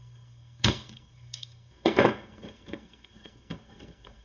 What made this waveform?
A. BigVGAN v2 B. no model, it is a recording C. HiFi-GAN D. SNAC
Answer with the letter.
D